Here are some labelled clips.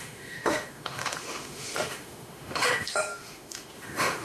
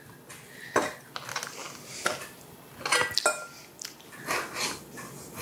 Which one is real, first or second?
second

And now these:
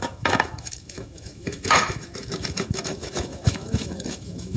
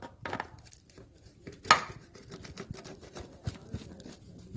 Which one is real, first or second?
second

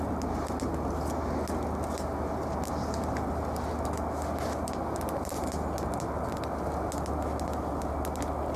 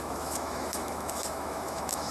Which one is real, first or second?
first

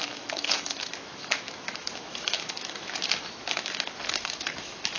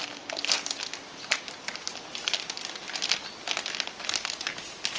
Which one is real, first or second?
second